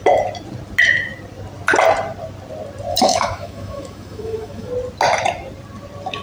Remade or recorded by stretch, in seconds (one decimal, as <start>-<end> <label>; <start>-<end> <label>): 0.0-2.9 recorded; 2.9-4.7 remade; 4.7-6.2 recorded